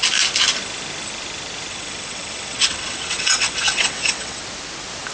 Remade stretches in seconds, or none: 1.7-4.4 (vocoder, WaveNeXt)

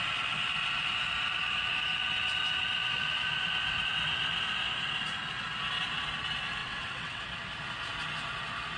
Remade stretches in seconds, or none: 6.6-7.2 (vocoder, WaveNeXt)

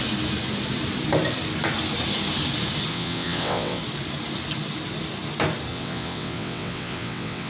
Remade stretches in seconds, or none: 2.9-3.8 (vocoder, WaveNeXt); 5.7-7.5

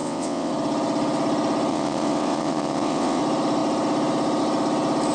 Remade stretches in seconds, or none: 0.0-0.5 (vocoder, WaveNeXt); 1.7-3.2

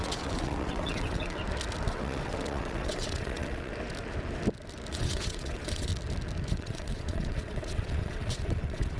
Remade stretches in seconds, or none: 0.0-1.4 (vocoder, WaveNeXt); 1.9-3.7; 4.9-5.9; 6.5-9.0

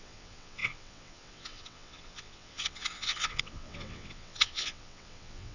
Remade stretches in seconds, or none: 0.0-5.5 (vocoder, WaveNeXt)